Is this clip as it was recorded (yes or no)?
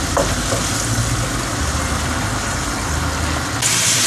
yes